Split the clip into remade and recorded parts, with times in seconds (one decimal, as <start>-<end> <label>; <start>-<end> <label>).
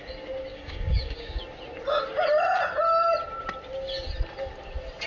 0.0-0.5 recorded; 0.5-1.4 remade; 1.4-5.1 recorded